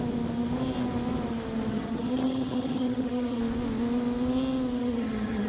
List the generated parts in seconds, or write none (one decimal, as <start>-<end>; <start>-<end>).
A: 1.7-3.4; 4.8-5.5